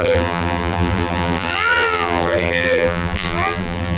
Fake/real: fake